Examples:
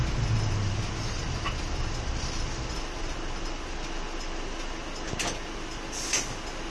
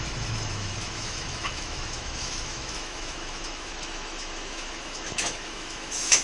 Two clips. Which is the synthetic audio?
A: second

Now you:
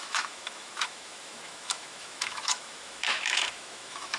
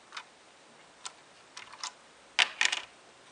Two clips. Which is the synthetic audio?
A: first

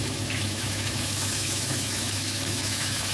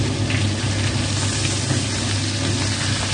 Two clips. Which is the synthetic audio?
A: first